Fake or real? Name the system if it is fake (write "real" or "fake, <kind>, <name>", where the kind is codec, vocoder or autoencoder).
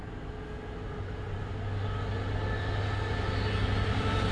real